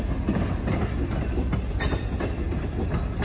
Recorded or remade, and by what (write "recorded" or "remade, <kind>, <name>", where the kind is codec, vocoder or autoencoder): recorded